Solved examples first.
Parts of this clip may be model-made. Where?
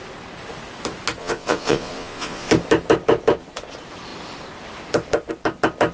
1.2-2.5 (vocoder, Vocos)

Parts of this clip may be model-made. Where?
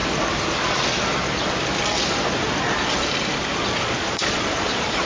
3.7-5.1 (vocoder, Vocos)